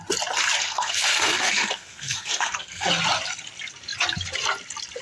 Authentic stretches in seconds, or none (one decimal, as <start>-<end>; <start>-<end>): 0.0-0.6; 2.9-5.0